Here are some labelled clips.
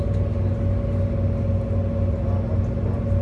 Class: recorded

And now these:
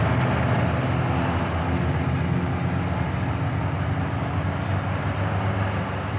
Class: recorded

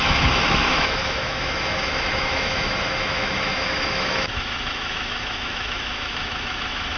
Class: remade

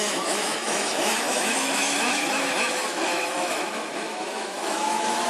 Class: remade